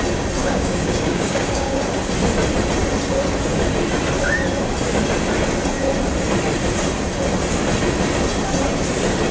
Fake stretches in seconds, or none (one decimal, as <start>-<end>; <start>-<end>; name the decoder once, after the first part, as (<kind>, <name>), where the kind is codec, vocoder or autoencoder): 0.4-1.8 (codec, DAC)